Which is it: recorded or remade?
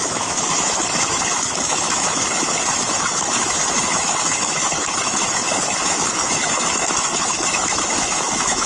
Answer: remade